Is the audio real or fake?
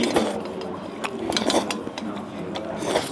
real